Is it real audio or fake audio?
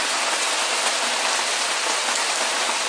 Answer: real